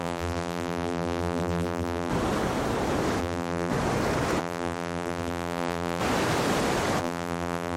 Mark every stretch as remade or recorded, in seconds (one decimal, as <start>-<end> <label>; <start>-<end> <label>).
0.0-2.1 remade; 2.1-3.2 recorded; 3.2-3.7 remade; 3.7-4.4 recorded; 4.4-6.0 remade; 6.0-7.0 recorded; 7.0-7.8 remade